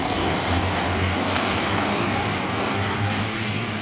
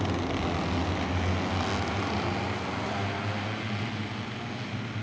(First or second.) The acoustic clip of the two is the second